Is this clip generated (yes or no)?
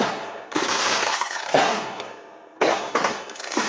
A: yes